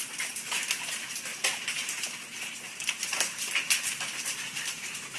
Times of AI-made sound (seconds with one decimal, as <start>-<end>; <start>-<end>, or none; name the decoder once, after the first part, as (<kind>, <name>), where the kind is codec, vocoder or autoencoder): none